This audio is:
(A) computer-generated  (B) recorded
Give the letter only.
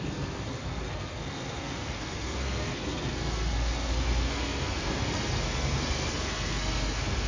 A